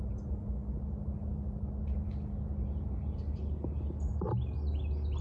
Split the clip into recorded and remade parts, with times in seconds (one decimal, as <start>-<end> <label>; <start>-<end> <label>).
0.0-5.2 recorded